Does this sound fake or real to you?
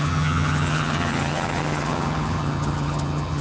fake